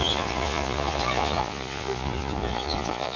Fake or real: fake